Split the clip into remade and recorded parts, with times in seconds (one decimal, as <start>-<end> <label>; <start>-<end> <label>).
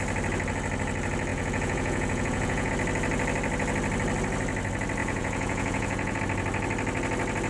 0.0-1.3 recorded; 1.3-2.7 remade; 2.7-5.0 recorded; 5.0-6.2 remade; 6.2-7.5 recorded